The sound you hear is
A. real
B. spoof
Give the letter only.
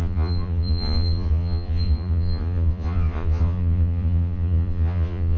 B